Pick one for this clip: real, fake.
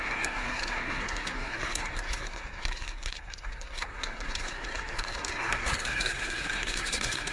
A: fake